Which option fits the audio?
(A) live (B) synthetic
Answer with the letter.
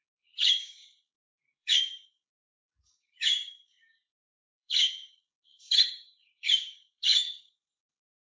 B